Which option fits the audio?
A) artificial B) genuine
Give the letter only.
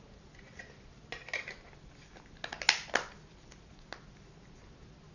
B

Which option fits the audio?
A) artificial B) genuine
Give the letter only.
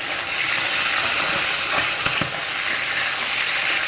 B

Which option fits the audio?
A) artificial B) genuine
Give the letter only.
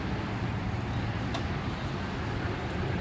A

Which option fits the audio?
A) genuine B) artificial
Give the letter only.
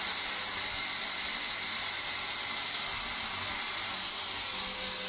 A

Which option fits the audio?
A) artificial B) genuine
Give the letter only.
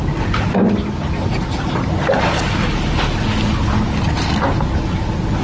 B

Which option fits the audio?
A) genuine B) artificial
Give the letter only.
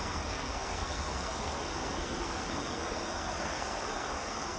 B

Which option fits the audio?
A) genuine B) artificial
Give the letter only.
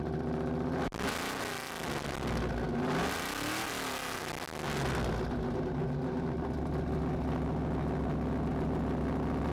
A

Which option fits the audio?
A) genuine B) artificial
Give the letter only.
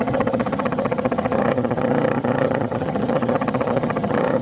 B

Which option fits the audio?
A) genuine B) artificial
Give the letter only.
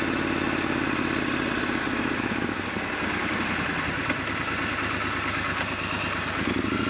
A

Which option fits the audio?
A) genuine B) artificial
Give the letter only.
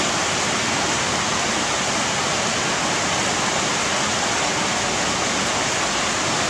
A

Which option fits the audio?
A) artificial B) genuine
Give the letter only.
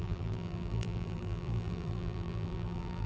A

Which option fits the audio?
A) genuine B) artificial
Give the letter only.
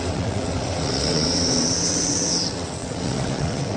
B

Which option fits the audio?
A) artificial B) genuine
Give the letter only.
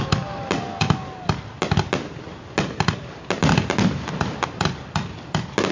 B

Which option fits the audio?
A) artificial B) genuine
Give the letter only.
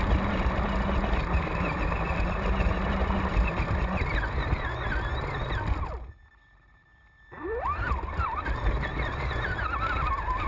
B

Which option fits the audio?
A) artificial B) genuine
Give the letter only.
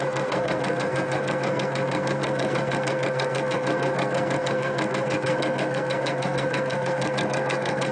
A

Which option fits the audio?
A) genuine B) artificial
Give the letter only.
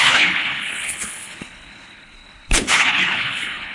B